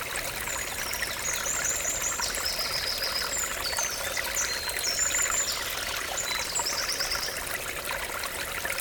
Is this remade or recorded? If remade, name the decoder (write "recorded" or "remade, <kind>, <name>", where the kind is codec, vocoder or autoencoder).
recorded